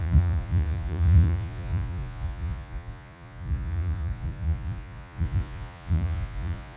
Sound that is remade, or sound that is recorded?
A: remade